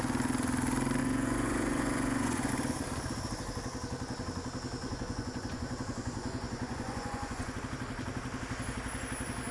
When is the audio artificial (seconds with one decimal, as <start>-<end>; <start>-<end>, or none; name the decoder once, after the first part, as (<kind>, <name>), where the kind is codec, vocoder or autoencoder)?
1.0-2.5 (vocoder, Vocos); 4.8-7.6